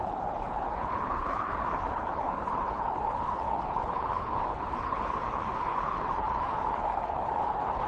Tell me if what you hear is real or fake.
fake